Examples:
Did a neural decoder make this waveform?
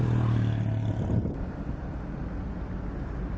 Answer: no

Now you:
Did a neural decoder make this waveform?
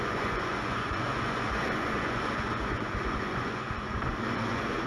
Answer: yes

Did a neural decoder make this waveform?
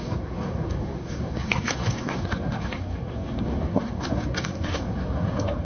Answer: yes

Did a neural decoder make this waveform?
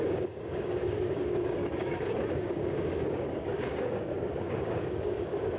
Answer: yes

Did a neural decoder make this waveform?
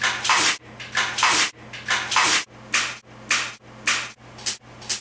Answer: no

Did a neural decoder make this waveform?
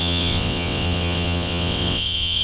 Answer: yes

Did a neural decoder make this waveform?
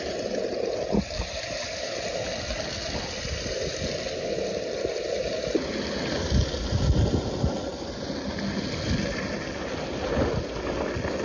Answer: no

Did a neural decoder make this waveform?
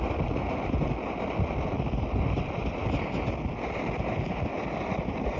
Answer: no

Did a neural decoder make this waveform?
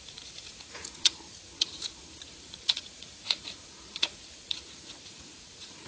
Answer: yes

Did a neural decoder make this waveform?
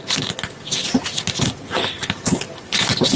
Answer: no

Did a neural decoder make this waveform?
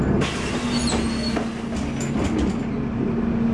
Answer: no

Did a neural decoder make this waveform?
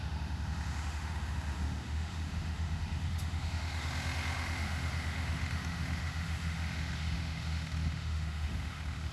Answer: yes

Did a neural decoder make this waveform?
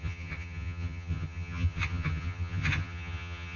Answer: yes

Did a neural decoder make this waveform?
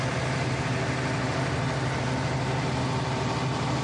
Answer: no